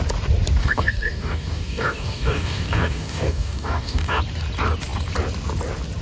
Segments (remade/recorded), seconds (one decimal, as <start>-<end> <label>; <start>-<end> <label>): 0.0-0.6 recorded; 0.6-4.2 remade; 4.2-6.0 recorded